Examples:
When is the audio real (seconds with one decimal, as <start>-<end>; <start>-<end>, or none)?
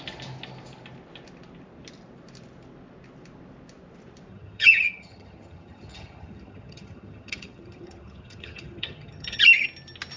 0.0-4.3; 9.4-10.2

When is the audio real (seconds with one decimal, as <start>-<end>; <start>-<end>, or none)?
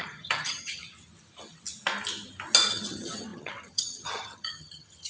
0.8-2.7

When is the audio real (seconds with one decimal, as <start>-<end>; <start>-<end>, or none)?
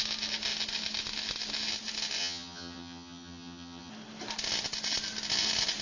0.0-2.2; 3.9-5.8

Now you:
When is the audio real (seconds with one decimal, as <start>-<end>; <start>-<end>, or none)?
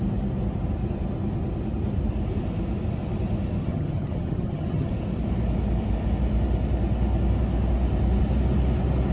0.0-3.6; 4.9-9.1